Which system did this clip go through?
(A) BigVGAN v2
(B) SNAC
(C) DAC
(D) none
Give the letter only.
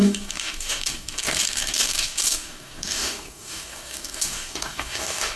C